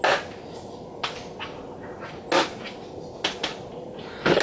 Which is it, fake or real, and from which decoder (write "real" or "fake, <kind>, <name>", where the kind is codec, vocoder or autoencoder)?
real